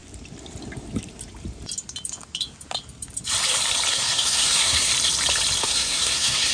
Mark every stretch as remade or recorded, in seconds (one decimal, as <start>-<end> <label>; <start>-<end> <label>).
0.0-3.9 recorded; 3.9-4.9 remade; 4.9-5.6 recorded; 5.6-6.5 remade

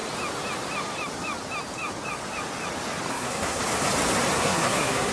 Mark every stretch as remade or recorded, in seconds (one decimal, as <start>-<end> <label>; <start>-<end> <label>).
0.0-3.1 recorded; 3.1-3.6 remade; 3.6-4.4 recorded; 4.4-5.1 remade

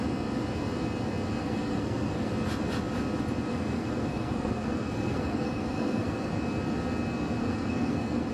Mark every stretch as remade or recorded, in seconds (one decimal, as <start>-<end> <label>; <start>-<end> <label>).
0.0-1.4 recorded; 1.4-2.3 remade; 2.3-3.5 recorded; 3.5-6.3 remade; 6.3-7.4 recorded; 7.4-8.3 remade

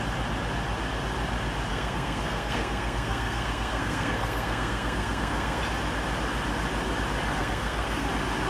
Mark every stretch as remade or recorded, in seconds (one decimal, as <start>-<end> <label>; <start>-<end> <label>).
0.0-1.7 recorded; 1.7-5.6 remade; 5.6-7.4 recorded; 7.4-8.1 remade; 8.1-8.5 recorded

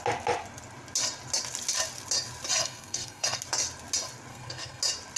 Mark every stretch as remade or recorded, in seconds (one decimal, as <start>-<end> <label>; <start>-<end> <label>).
0.0-2.6 recorded; 2.6-3.4 remade; 3.4-4.3 recorded; 4.3-4.8 remade; 4.8-5.2 recorded

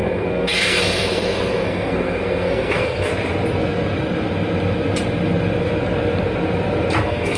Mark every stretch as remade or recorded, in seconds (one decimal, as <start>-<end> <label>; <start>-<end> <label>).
0.0-3.1 remade; 3.1-7.0 recorded; 7.0-7.4 remade